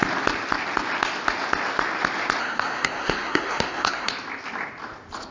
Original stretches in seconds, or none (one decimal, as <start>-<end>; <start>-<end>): 0.0-2.4; 4.1-5.3